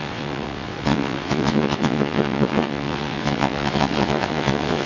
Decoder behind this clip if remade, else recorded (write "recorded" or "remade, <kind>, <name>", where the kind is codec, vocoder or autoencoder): remade, vocoder, WaveNeXt